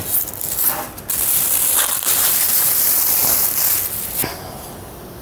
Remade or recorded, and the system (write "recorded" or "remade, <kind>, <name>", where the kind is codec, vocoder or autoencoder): recorded